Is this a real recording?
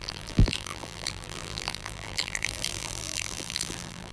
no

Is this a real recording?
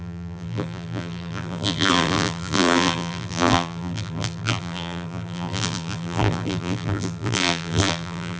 no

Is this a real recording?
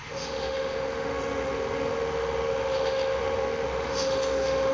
no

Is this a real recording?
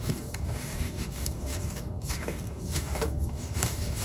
no